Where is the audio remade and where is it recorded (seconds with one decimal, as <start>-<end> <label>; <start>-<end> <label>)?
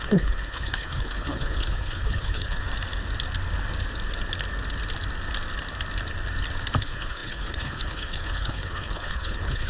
0.0-2.6 remade; 2.6-6.8 recorded; 6.8-9.7 remade